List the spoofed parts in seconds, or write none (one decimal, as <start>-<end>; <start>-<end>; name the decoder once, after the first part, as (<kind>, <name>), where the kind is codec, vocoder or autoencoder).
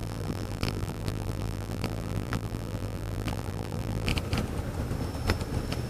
0.0-4.1 (vocoder, BigVGAN v2)